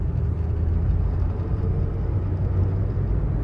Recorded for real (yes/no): yes